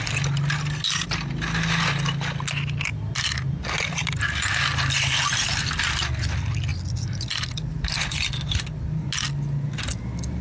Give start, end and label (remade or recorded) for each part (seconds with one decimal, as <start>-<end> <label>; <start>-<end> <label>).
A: 0.0-10.4 recorded